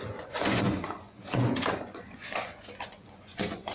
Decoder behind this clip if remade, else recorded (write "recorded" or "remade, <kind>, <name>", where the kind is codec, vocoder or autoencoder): remade, vocoder, Vocos